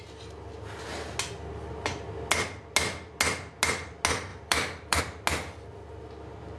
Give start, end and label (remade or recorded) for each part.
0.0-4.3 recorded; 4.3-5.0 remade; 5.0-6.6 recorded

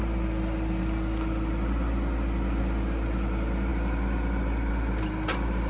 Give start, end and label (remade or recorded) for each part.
0.0-5.7 recorded

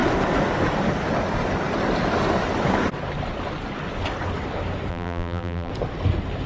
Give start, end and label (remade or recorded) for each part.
0.0-4.9 recorded; 4.9-5.7 remade; 5.7-6.5 recorded

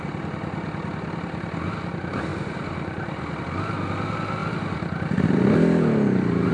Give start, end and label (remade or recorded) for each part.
0.0-2.3 recorded; 2.3-3.4 remade; 3.4-4.4 recorded; 4.4-6.5 remade

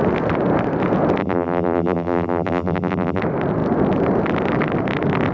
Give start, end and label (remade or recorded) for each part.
0.0-1.2 recorded; 1.2-3.2 remade; 3.2-5.3 recorded

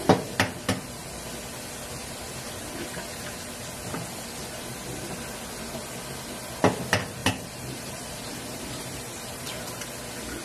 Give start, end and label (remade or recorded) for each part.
0.0-7.2 recorded; 7.2-9.8 remade; 9.8-10.4 recorded

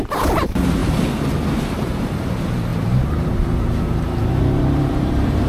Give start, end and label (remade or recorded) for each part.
0.0-5.5 remade

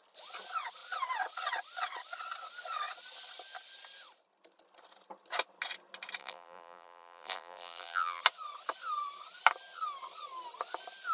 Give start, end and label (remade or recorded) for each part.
0.0-6.2 recorded; 6.2-8.2 remade; 8.2-11.1 recorded